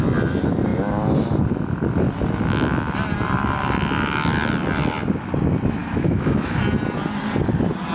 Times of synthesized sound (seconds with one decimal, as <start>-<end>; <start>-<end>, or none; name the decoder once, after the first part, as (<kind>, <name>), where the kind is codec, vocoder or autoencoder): 5.8-6.6 (autoencoder, DAC-VAE)